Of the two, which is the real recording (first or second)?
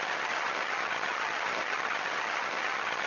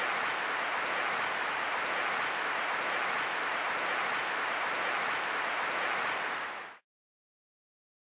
second